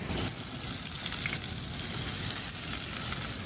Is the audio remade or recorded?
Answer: recorded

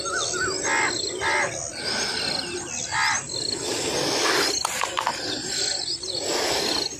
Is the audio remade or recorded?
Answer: recorded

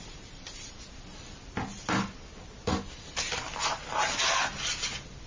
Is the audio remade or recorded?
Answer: recorded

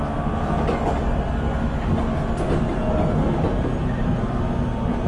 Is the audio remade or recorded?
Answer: recorded